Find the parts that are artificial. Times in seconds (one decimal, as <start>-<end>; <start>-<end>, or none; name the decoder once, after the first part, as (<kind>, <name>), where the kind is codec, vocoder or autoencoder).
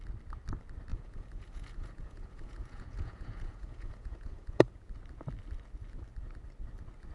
0.9-4.7 (vocoder, Vocos)